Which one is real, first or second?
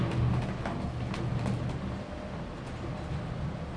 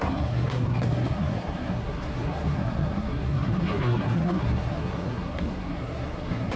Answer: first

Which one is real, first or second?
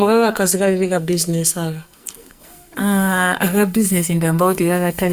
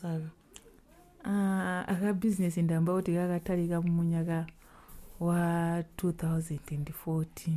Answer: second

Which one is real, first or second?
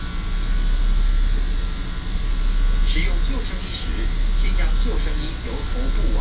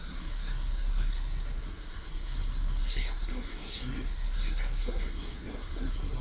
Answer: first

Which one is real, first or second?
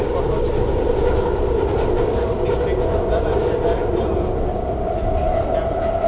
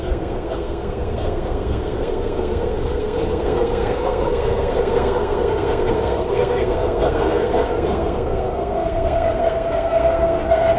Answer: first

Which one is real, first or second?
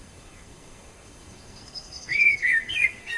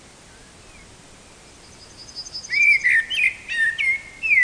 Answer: second